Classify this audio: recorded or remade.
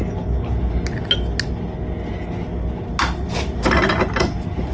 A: recorded